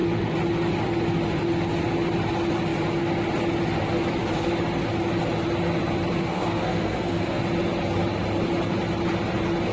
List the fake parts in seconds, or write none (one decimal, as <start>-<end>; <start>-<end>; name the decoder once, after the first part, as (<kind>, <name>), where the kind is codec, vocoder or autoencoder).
6.2-7.4 (codec, SNAC)